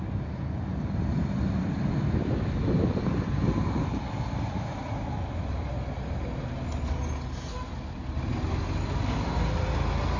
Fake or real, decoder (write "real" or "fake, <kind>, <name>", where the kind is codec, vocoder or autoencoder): real